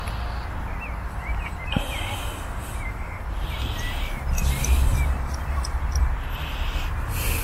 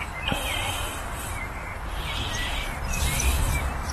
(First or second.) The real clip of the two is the first